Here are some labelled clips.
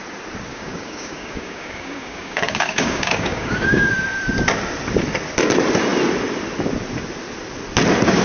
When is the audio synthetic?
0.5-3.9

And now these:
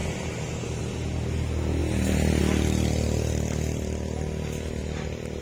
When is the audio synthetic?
1.8-2.4